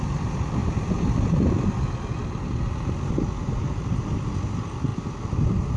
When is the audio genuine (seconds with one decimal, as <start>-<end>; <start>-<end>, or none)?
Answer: 0.0-5.8